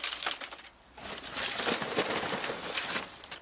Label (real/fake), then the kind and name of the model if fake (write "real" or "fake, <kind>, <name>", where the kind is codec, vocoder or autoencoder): real